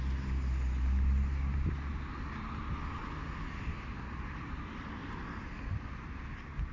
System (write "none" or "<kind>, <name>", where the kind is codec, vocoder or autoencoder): none